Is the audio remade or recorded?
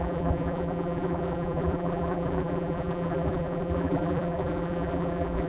remade